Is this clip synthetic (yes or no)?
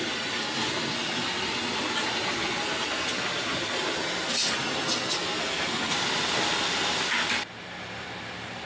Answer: no